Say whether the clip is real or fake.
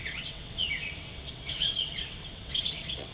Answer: fake